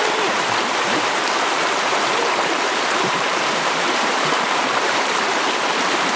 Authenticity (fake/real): fake